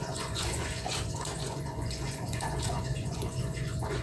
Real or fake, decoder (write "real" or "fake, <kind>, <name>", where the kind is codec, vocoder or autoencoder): fake, vocoder, Vocos